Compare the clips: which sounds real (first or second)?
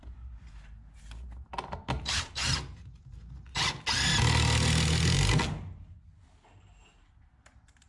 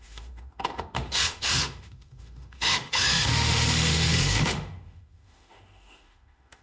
first